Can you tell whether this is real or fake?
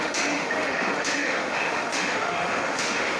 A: fake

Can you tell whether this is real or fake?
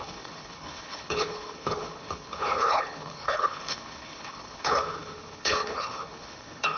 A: fake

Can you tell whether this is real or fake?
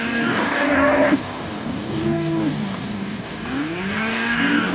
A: fake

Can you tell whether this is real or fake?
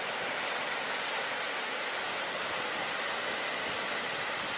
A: real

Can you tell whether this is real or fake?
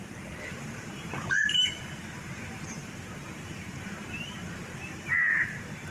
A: fake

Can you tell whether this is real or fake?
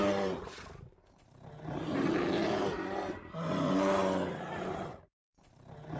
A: real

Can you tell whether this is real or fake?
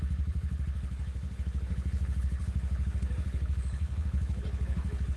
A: fake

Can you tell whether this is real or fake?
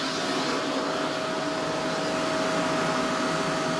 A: real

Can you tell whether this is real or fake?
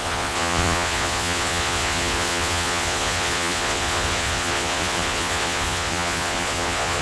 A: fake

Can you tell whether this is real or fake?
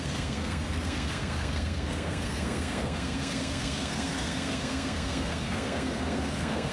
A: fake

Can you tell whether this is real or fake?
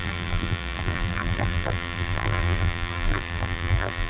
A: fake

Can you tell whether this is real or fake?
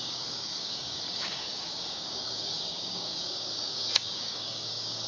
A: fake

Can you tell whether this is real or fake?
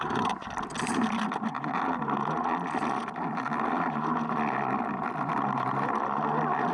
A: real